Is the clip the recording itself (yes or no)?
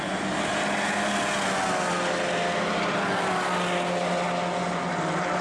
yes